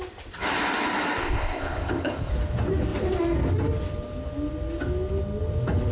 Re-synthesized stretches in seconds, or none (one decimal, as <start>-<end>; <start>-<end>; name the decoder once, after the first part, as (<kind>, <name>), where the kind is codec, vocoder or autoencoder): 1.2-2.3 (codec, ZipCodec)